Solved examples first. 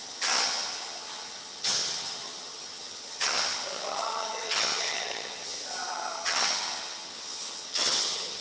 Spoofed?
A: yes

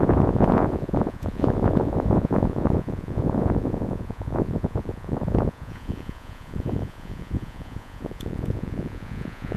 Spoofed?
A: yes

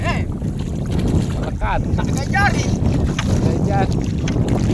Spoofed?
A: no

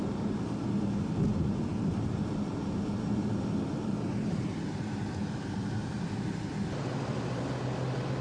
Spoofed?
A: no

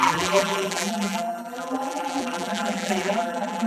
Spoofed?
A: yes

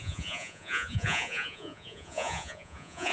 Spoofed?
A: yes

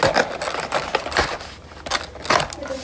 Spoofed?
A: no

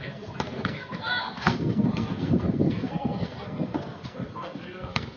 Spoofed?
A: yes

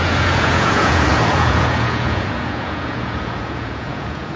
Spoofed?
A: yes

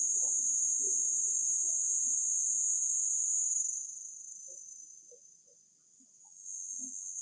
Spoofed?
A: no